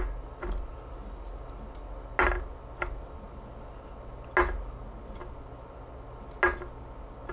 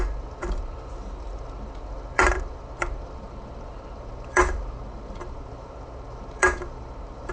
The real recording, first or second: first